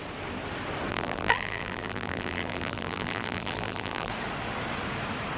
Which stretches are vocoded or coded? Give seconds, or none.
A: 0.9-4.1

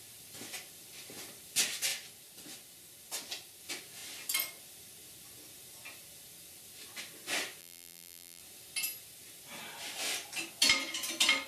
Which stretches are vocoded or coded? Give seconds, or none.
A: 7.6-8.4